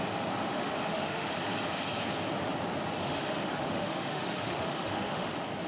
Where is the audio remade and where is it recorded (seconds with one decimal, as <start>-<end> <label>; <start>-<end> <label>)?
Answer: 0.0-0.5 recorded; 0.5-1.3 remade; 1.3-3.0 recorded; 3.0-5.3 remade; 5.3-5.7 recorded